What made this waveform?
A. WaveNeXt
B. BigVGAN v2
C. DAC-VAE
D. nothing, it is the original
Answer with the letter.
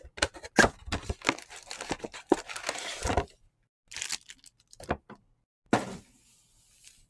D